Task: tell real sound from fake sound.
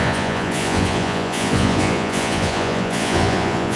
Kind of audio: fake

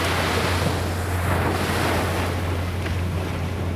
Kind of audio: real